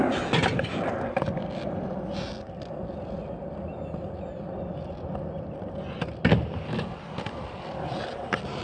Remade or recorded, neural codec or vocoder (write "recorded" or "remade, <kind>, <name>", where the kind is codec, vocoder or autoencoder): recorded